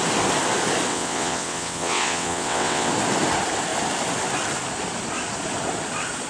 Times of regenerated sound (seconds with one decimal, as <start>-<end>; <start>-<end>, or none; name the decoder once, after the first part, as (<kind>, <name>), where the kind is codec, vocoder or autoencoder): 0.9-2.9 (vocoder, WaveNeXt)